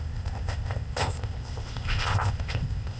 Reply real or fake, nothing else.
fake